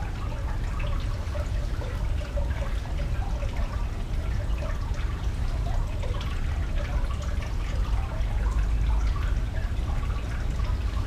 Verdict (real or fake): real